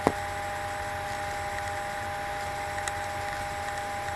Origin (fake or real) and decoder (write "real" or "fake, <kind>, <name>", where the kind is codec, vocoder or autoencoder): real